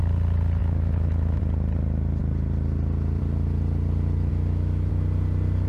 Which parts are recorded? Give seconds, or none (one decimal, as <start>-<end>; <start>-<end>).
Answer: 0.0-0.6; 1.4-4.3; 4.9-5.7